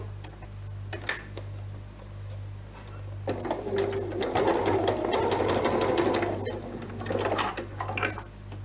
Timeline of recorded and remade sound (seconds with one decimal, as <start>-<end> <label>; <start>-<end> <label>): 0.0-8.6 recorded